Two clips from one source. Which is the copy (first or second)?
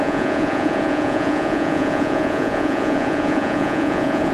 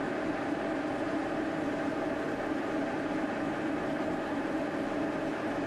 first